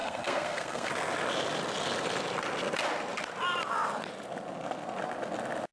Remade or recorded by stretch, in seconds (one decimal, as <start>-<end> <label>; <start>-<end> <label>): 0.0-0.9 remade; 0.9-5.7 recorded

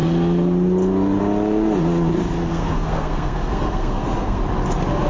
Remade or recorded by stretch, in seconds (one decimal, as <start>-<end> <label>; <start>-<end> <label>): 0.0-2.5 recorded; 2.5-4.4 remade; 4.4-5.1 recorded

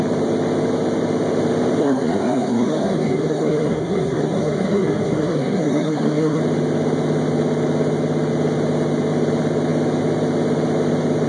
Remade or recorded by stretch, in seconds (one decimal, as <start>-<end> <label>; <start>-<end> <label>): 0.0-1.8 recorded; 1.8-6.4 remade; 6.4-11.3 recorded

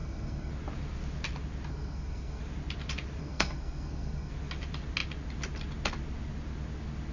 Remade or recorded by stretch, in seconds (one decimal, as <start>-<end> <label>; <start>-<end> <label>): 0.0-0.5 remade; 0.5-1.7 recorded; 1.7-2.4 remade; 2.4-3.2 recorded; 3.2-4.3 remade; 4.3-7.1 recorded

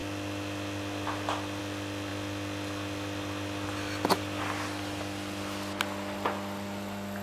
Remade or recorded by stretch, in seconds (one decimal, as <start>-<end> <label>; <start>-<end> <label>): 0.0-7.2 recorded